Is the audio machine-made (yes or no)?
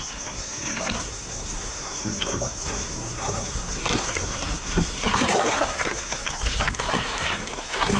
yes